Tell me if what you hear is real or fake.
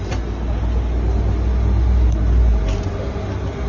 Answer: real